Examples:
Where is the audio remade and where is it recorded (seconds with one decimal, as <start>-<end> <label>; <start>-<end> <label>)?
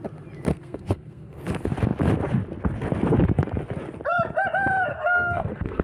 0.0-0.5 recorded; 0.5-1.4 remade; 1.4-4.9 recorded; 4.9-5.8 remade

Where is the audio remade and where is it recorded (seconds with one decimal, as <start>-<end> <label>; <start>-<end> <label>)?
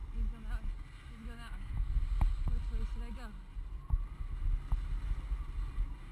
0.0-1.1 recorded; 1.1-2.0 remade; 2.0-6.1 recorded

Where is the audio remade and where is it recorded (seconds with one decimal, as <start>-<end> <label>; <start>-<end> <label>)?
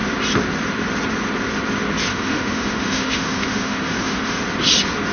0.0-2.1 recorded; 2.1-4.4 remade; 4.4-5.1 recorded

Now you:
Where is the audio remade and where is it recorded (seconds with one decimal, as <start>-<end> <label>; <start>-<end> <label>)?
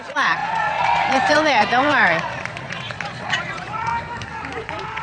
0.0-3.9 remade; 3.9-4.6 recorded; 4.6-5.0 remade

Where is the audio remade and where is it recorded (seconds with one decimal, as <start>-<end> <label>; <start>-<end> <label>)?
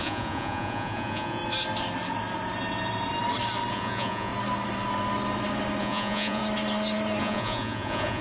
0.0-1.4 remade; 1.4-3.7 recorded; 3.7-4.3 remade; 4.3-5.8 recorded; 5.8-6.4 remade; 6.4-7.2 recorded; 7.2-8.2 remade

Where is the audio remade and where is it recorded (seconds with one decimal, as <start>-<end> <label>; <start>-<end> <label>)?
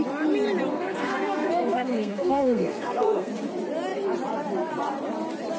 0.0-0.7 recorded; 0.7-3.3 remade; 3.3-5.6 recorded